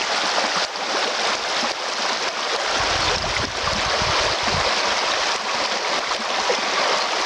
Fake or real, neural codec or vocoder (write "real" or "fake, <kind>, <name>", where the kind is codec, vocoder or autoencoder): real